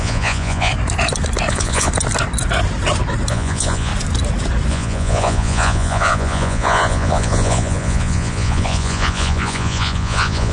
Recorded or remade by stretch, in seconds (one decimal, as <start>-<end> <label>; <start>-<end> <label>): 0.0-0.7 remade; 0.7-1.5 recorded; 1.5-1.9 remade; 1.9-3.3 recorded; 3.3-3.9 remade; 3.9-4.7 recorded; 4.7-10.5 remade